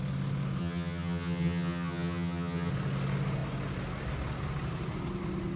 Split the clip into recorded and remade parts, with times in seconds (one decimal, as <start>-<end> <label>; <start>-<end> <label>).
0.0-0.6 recorded; 0.6-2.7 remade; 2.7-5.6 recorded